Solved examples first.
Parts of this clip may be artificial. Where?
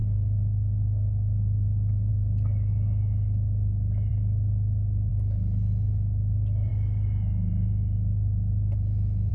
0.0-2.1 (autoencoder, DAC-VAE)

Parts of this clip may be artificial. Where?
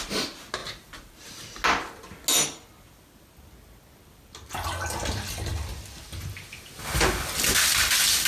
none